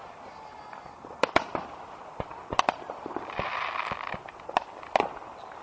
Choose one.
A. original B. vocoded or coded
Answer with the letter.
A